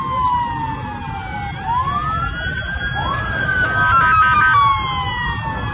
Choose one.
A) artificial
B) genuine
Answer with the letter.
B